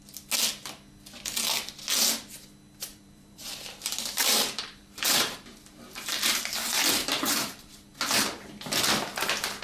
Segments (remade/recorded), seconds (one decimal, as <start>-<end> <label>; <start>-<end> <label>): 0.0-2.9 recorded; 2.9-7.9 remade; 7.9-9.6 recorded